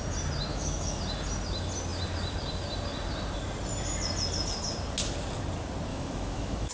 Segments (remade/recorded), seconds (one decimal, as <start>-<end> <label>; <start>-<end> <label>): 0.0-0.5 recorded; 0.5-1.0 remade; 1.0-5.9 recorded; 5.9-6.7 remade